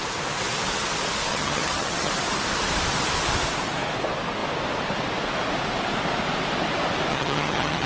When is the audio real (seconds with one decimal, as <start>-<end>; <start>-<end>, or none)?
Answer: 0.0-1.3; 2.1-7.1